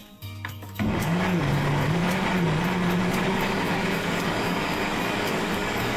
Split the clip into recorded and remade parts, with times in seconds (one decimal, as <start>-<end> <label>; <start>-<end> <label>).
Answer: 0.0-2.0 remade; 2.0-3.0 recorded; 3.0-6.0 remade